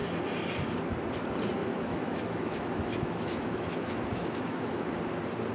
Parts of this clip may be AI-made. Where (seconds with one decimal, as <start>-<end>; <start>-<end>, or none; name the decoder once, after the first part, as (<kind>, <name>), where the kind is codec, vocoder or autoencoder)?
1.6-4.9 (autoencoder, DAC-VAE)